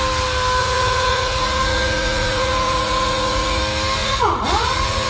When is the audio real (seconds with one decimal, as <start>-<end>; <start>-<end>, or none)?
0.0-0.6; 3.6-4.0